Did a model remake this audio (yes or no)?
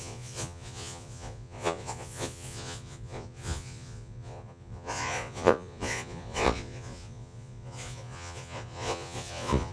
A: yes